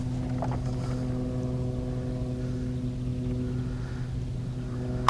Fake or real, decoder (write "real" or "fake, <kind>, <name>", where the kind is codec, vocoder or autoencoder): real